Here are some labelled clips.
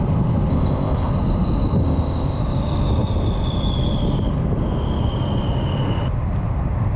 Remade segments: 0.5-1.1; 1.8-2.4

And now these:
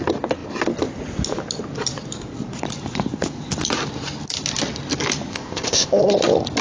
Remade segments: 5.3-6.0

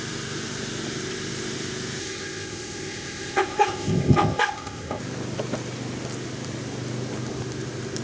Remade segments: 2.0-5.0

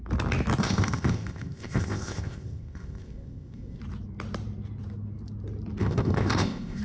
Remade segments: 0.6-3.8; 5.8-6.8

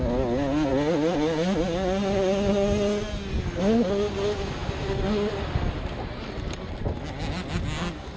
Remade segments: none

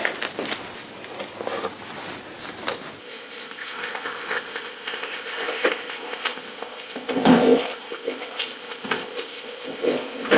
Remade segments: 3.0-10.4

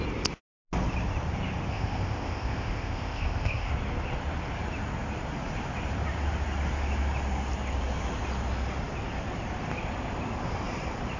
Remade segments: 1.7-3.7